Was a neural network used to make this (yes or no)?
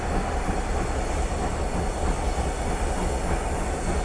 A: no